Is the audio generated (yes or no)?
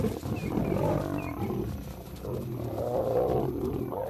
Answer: no